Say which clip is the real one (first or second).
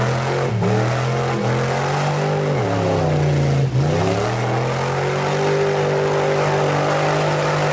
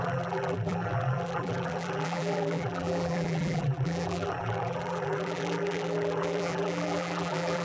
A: first